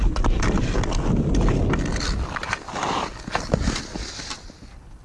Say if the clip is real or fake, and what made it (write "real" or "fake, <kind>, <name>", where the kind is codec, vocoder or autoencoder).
real